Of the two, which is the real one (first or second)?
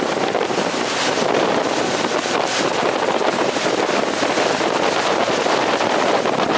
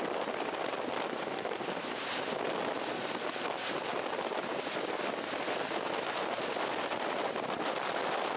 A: second